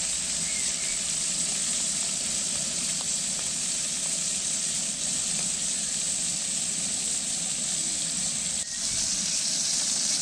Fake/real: fake